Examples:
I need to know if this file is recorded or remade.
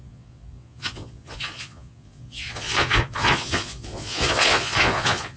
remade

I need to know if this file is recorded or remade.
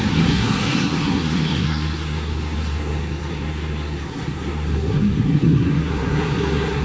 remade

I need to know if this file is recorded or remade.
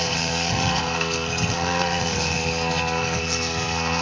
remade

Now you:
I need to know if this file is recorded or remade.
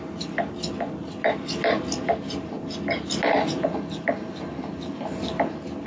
recorded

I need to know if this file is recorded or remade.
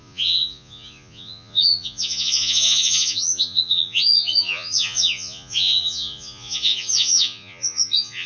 remade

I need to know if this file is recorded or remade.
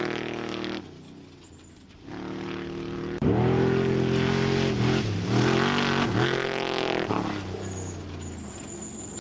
recorded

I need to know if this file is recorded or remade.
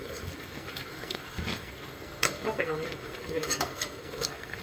remade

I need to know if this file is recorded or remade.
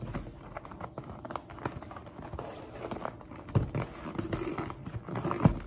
recorded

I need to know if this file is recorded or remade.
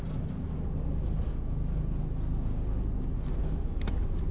recorded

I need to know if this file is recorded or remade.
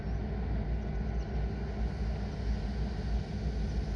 recorded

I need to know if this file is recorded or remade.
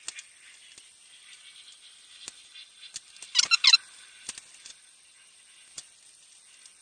recorded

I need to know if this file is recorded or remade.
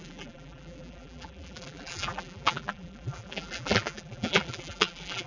remade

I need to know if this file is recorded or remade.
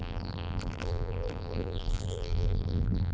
remade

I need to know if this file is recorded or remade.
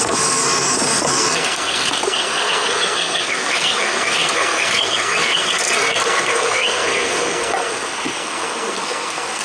remade